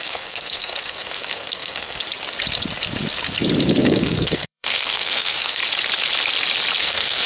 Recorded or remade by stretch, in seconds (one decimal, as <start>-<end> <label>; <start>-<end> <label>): 0.0-2.0 remade; 2.0-3.8 recorded; 3.8-5.6 remade; 5.6-6.8 recorded; 6.8-7.3 remade